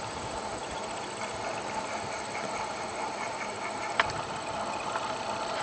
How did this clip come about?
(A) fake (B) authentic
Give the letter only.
B